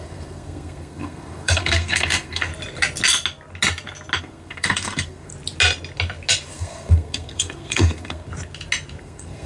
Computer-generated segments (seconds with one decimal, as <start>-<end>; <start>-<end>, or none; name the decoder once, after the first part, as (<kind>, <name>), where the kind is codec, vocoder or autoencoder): 0.0-2.5 (codec, SNAC); 4.2-5.3; 6.5-8.3; 9.0-9.5

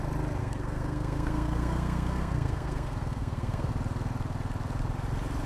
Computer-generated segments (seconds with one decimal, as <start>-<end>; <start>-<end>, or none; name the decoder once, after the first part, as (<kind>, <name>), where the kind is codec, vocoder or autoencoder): 0.4-3.7 (codec, SNAC)

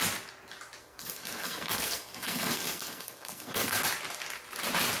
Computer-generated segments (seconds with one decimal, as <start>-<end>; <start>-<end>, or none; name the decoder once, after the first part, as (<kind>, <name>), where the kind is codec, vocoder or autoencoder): 0.8-3.8 (codec, SNAC)

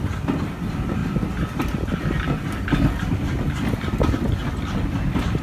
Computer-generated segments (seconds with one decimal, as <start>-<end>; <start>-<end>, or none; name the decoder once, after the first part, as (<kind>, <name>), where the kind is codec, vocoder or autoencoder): none

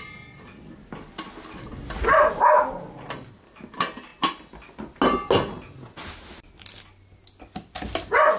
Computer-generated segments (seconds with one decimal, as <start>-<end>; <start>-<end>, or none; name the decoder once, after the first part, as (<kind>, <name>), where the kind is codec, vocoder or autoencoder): none

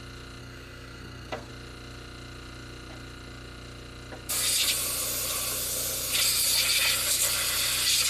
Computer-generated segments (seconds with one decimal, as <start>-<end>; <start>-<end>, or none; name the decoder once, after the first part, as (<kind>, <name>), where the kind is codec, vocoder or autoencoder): 0.4-1.5 (codec, SNAC)

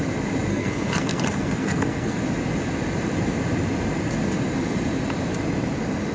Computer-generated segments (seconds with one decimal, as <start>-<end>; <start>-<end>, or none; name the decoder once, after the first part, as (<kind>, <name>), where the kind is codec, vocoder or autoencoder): 0.5-2.2 (codec, SNAC)

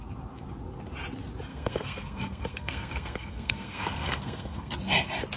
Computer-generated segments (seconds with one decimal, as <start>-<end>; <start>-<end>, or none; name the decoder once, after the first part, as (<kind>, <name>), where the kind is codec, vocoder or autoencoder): 1.5-4.7 (codec, SNAC)